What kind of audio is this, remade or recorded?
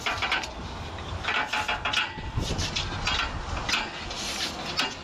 recorded